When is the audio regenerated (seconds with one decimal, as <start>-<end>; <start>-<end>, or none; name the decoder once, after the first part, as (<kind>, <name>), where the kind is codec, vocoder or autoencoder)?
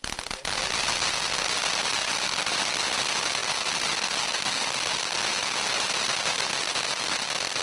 none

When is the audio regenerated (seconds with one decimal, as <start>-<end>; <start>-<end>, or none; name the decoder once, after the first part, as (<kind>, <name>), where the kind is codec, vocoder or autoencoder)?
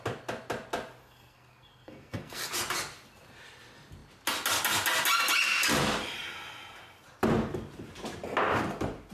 1.0-2.5 (codec, SNAC)